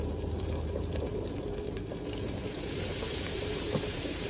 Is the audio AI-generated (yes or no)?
yes